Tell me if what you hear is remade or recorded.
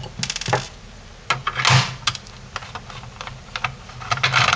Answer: recorded